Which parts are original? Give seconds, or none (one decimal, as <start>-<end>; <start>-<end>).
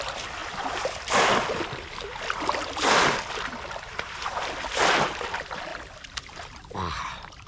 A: 0.0-0.4; 4.9-5.7; 7.0-7.5